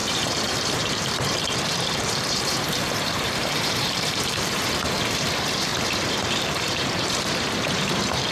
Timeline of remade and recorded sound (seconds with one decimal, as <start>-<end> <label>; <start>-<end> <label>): 0.0-8.3 remade